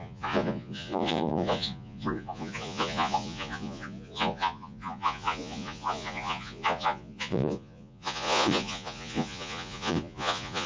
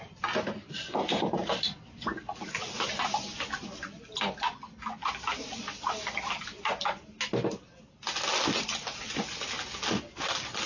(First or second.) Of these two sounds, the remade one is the first